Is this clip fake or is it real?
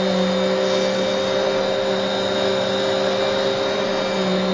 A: real